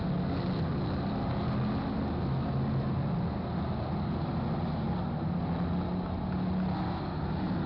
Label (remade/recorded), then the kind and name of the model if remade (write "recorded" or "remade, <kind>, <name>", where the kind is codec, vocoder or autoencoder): recorded